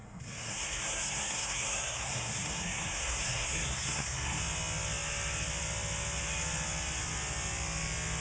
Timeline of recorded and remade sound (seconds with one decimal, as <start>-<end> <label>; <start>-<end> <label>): 0.0-4.4 remade; 4.4-8.2 recorded